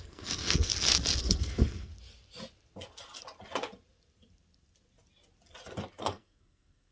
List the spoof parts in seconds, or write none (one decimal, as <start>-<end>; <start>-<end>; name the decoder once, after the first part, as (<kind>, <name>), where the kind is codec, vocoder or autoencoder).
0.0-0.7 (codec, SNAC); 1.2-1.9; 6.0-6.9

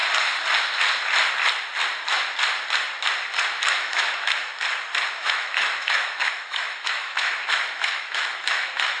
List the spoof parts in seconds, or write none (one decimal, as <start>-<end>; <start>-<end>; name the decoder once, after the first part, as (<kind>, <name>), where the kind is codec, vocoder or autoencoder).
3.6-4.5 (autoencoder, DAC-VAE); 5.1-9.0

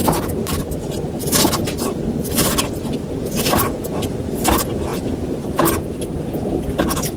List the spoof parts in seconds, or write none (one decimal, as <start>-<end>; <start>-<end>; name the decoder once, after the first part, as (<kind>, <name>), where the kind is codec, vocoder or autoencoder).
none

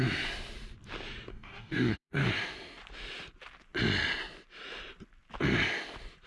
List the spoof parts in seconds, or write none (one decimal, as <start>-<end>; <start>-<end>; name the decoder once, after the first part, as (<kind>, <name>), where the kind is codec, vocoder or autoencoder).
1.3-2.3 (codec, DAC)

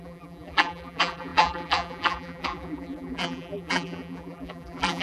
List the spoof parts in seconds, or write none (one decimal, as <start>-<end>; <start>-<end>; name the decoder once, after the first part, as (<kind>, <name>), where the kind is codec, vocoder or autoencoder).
0.0-5.0 (vocoder, BigVGAN v2)